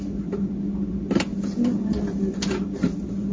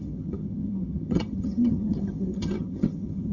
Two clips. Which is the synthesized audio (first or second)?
second